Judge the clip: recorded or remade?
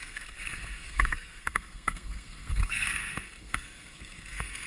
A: remade